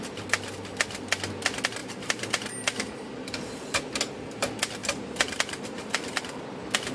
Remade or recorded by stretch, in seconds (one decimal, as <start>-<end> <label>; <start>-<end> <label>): 0.0-1.8 recorded; 1.8-3.6 remade; 3.6-4.8 recorded; 4.8-6.4 remade; 6.4-6.9 recorded